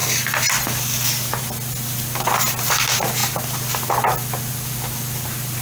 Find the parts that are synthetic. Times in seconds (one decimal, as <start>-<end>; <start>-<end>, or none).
none

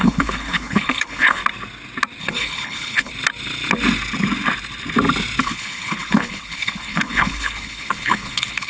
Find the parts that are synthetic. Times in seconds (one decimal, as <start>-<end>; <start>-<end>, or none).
0.0-1.4; 2.2-3.1; 5.4-8.7

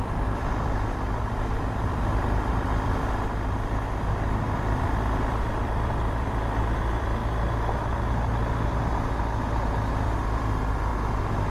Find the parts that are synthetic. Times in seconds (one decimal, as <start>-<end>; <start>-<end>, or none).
0.0-7.2; 10.0-10.9

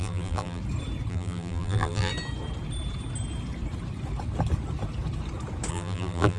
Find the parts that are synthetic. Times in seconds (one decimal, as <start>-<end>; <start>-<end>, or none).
0.0-0.6; 1.1-2.1; 5.7-6.4

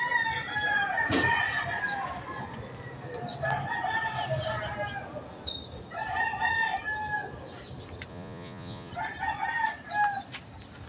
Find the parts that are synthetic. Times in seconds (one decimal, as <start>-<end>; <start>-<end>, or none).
8.1-8.9